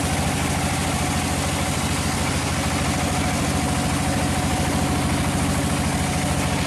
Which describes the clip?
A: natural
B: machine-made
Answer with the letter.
A